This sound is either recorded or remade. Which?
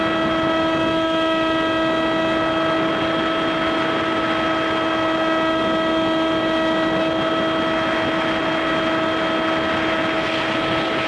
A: recorded